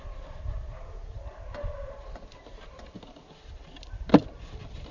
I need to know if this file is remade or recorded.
recorded